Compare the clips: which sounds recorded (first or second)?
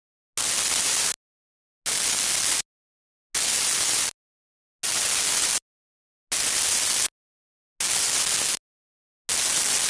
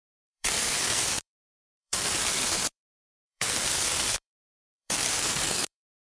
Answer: first